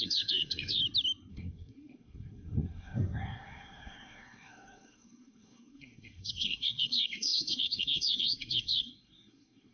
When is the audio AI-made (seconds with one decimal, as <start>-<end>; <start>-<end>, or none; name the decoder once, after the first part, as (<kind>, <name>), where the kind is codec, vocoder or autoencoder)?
0.0-0.8 (codec, SNAC); 1.3-9.7